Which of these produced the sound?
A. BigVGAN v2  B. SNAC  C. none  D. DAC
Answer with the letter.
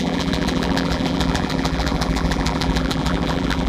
A